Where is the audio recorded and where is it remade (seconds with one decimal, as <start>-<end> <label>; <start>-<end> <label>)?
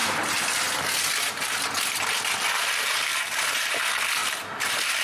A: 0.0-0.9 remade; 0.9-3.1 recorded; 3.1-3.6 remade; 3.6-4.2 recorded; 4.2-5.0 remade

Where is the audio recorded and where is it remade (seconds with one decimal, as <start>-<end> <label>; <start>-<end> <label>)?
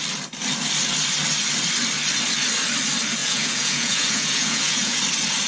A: 0.0-3.2 recorded; 3.2-5.0 remade; 5.0-5.5 recorded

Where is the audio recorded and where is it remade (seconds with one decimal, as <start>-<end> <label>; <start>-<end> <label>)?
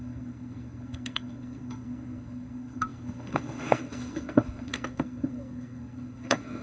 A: 0.0-6.6 remade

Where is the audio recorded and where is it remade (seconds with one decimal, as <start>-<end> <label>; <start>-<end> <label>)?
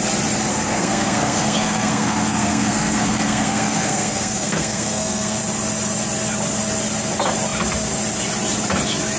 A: 0.0-0.5 recorded; 0.5-5.4 remade; 5.4-9.2 recorded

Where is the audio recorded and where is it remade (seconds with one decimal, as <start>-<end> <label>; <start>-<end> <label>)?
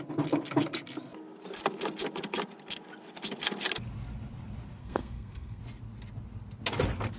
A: 0.0-4.8 recorded; 4.8-5.6 remade; 5.6-7.2 recorded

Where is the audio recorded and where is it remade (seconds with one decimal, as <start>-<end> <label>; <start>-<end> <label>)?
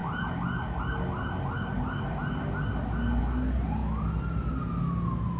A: 0.0-5.4 recorded